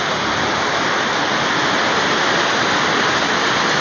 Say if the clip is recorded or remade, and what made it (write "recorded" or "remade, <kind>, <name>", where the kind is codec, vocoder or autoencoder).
recorded